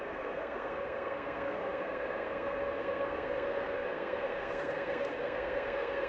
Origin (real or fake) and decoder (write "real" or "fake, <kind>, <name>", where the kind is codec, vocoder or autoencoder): fake, codec, SNAC